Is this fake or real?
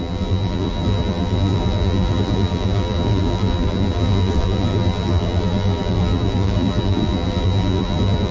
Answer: fake